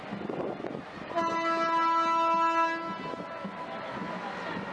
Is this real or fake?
real